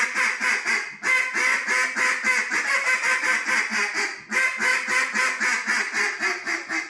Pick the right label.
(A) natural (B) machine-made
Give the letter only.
A